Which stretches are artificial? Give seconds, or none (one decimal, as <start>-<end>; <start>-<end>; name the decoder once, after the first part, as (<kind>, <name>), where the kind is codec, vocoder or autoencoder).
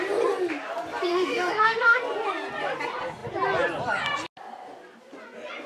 1.1-2.0 (autoencoder, DAC-VAE)